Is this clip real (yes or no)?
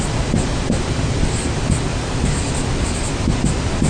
yes